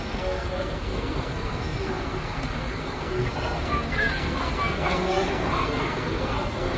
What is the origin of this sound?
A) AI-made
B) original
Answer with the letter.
A